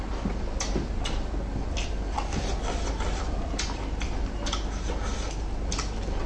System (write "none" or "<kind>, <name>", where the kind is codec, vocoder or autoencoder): none